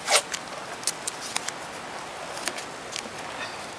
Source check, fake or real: real